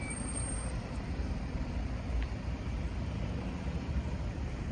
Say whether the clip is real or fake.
fake